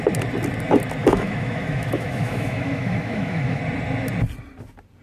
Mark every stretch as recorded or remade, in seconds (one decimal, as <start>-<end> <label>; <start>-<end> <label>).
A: 0.0-1.0 recorded; 1.0-3.6 remade; 3.6-5.0 recorded